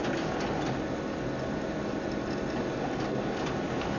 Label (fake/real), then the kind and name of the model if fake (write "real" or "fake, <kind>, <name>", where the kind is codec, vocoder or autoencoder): real